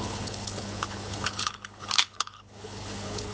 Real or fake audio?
fake